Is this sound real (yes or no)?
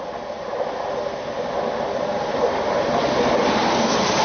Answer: yes